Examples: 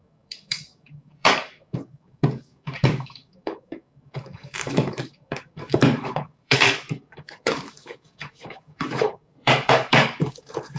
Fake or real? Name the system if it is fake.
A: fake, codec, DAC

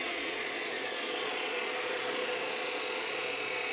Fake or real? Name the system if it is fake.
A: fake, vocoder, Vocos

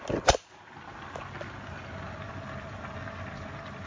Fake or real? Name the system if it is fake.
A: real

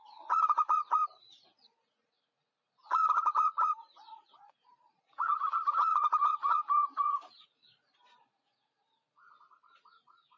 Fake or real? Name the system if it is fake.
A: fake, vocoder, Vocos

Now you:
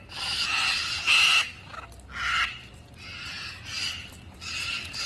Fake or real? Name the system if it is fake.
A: real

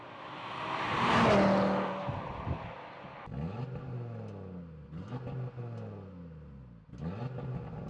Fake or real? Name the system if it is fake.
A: real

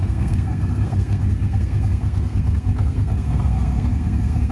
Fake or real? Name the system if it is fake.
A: fake, codec, SNAC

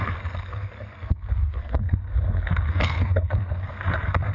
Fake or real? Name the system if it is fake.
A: fake, codec, SNAC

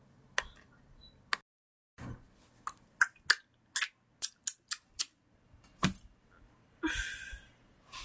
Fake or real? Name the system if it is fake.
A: real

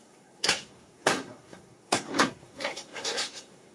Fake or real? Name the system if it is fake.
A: fake, codec, SNAC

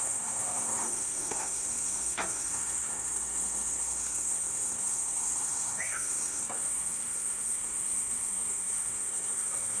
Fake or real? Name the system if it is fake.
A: fake, codec, SNAC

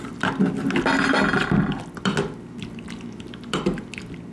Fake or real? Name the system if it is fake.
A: real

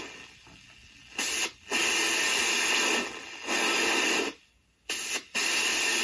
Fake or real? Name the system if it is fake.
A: real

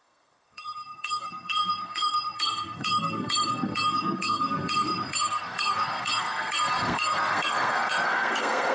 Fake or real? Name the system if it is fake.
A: fake, codec, SNAC